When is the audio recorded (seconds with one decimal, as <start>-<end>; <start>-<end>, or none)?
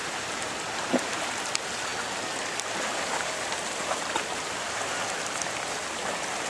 1.2-6.5